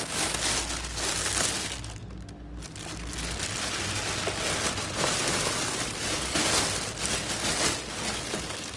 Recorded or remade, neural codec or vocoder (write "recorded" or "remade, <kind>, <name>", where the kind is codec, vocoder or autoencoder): recorded